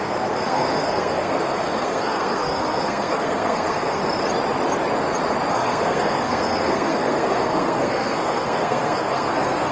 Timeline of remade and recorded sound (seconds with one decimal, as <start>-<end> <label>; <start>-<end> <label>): 0.0-4.0 remade; 4.0-5.5 recorded; 5.5-9.7 remade

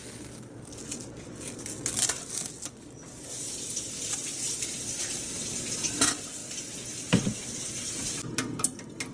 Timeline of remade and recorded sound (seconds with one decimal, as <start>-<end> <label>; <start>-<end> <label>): 0.0-9.1 recorded

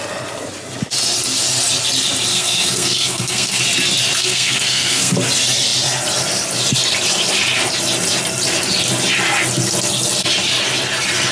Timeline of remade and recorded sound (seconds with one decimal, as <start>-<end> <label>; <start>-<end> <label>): 0.0-2.3 recorded; 2.3-3.6 remade; 3.6-4.2 recorded; 4.2-5.1 remade; 5.1-11.3 recorded